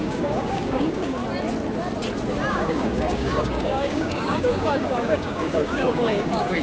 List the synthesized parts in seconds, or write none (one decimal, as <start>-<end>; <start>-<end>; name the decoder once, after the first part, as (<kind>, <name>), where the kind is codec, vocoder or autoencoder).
0.0-1.2 (codec, DAC); 2.5-6.6